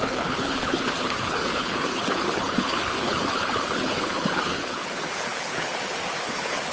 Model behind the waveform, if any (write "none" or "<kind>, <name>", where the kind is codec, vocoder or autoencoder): codec, HILCodec